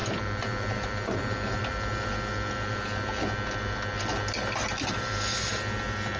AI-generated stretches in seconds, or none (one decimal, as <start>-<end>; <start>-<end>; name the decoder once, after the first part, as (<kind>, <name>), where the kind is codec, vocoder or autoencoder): none